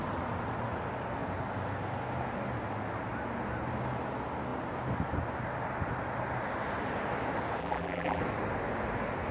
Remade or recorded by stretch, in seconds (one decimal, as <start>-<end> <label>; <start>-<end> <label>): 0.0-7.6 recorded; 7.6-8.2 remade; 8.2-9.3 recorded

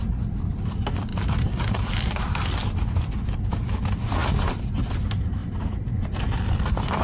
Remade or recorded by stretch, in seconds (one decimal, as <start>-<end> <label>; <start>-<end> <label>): 0.0-1.1 recorded; 1.1-1.6 remade; 1.6-5.4 recorded; 5.4-6.4 remade; 6.4-7.0 recorded

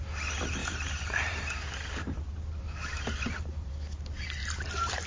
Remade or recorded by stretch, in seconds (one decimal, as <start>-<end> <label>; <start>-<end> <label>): 0.0-0.6 recorded; 0.6-3.7 remade; 3.7-4.4 recorded; 4.4-5.1 remade

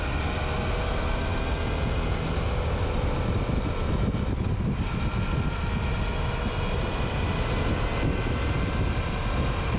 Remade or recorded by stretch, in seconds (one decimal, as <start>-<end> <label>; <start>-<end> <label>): 0.0-9.8 recorded

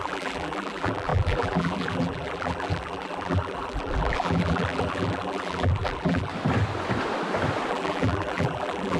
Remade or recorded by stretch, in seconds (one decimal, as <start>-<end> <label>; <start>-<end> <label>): 0.0-6.3 remade; 6.3-7.7 recorded; 7.7-9.0 remade

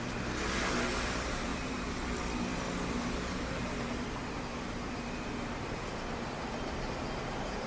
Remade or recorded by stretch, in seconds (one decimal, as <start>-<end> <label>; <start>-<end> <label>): 0.0-1.5 recorded; 1.5-2.7 remade; 2.7-7.7 recorded